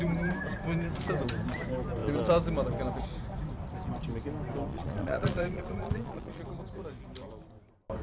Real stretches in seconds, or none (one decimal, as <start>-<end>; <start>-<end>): 0.0-4.7; 6.4-8.0